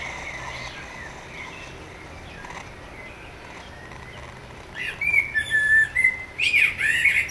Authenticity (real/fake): real